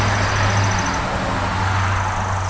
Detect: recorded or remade recorded